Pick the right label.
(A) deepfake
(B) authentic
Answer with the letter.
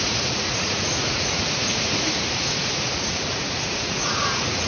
A